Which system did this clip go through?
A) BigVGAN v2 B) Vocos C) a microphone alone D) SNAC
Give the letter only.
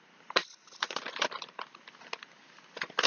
C